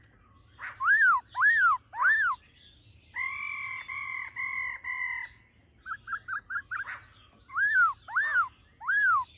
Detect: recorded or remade recorded